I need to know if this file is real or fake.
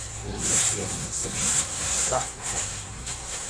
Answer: fake